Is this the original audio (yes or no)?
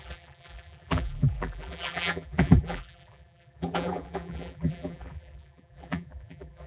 no